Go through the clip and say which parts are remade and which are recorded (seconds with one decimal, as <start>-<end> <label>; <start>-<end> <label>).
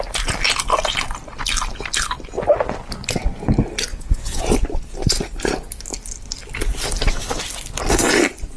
0.0-3.9 recorded; 3.9-4.4 remade; 4.4-8.6 recorded